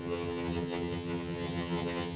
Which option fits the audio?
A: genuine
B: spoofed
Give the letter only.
B